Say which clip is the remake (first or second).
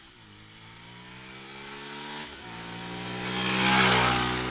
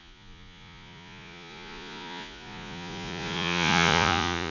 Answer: second